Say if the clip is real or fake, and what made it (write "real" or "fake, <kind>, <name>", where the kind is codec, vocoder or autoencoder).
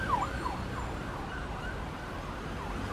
real